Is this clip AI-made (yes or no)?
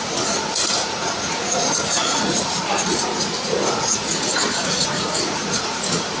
yes